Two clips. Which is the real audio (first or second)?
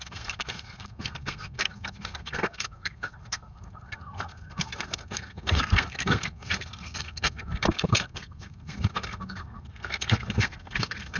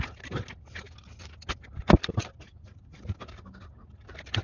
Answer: second